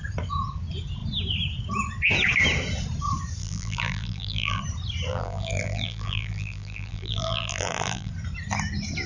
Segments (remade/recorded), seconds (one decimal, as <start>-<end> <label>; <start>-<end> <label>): 0.0-3.4 recorded; 3.4-4.6 remade; 4.6-5.1 recorded; 5.1-8.1 remade; 8.1-9.1 recorded